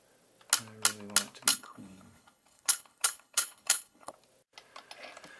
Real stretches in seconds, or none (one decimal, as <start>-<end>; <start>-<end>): 0.0-1.5; 4.1-5.4